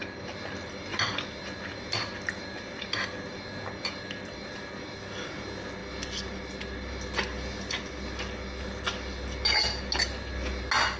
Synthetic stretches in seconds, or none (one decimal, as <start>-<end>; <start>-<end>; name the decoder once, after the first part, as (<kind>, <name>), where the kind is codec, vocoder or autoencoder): none